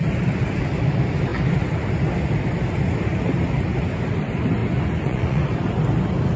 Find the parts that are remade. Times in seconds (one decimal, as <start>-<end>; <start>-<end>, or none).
4.6-5.4